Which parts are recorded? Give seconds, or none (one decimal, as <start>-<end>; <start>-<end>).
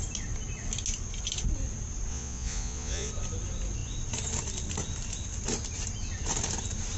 0.0-2.1; 3.1-7.0